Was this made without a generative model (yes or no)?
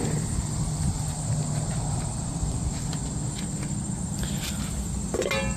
yes